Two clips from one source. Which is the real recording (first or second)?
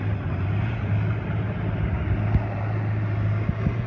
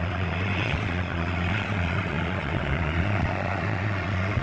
first